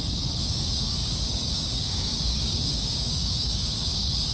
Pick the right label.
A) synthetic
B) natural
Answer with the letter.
A